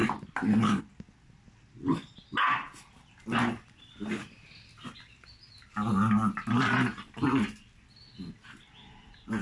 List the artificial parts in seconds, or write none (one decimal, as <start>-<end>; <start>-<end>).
none

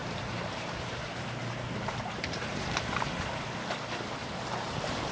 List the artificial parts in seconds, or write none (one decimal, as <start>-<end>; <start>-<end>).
0.0-2.9; 4.2-5.1

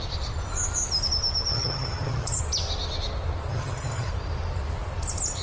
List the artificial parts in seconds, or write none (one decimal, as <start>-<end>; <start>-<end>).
1.5-2.4; 3.5-4.1

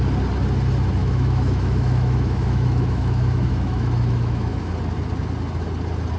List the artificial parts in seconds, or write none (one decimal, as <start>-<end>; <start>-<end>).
1.0-4.7

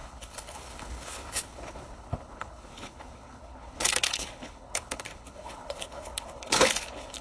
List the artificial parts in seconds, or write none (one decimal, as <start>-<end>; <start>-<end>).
0.0-7.2

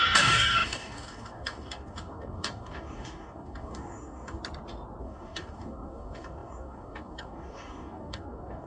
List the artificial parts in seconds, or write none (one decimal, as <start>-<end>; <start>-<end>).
0.0-4.4; 5.0-8.7

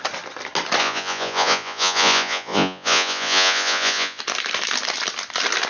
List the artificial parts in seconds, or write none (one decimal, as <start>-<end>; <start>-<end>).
0.8-4.2

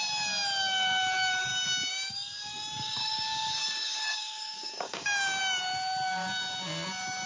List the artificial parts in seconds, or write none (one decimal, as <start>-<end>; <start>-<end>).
1.5-5.4